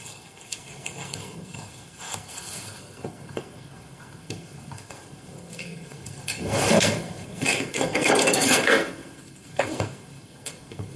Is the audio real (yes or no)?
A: no